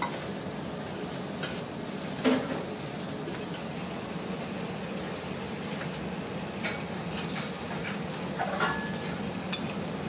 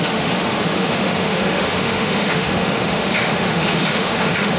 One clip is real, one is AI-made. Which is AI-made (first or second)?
second